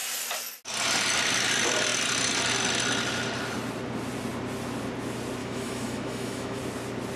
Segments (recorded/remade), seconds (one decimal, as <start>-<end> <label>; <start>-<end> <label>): 0.0-5.4 recorded; 5.4-6.6 remade; 6.6-7.2 recorded